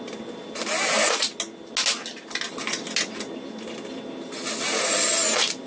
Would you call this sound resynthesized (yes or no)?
no